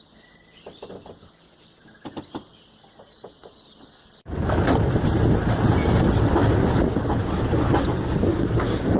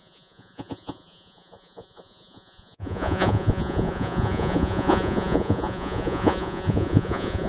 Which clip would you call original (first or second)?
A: first